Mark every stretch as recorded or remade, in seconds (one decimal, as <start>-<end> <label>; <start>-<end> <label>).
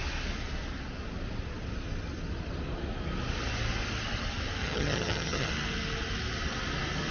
0.0-4.6 recorded; 4.6-5.5 remade; 5.5-7.1 recorded